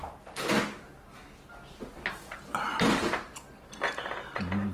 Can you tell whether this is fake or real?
real